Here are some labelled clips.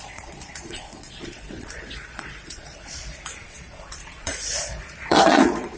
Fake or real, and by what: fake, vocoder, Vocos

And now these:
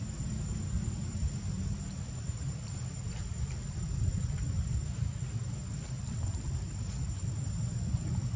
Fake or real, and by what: fake, vocoder, BigVGAN v2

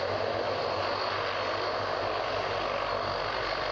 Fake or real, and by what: real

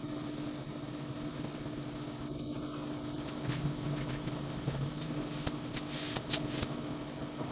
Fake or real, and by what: real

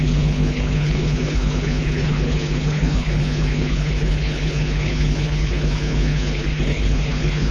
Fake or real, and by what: fake, codec, HILCodec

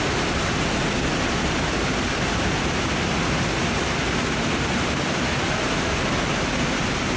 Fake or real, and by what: fake, vocoder, BigVGAN v2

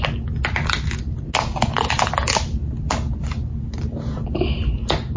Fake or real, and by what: real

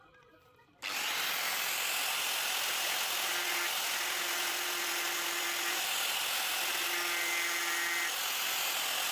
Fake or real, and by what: real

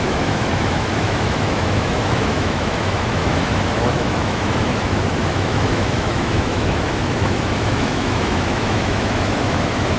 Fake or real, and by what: fake, autoencoder, DAC-VAE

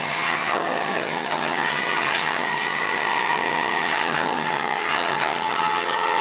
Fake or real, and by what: fake, vocoder, HiFi-GAN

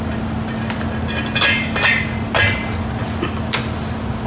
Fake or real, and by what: real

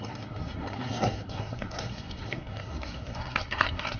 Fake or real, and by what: fake, codec, SNAC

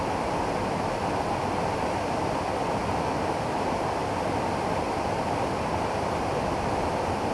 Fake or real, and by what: real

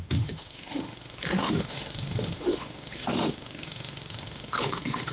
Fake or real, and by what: fake, autoencoder, DAC-VAE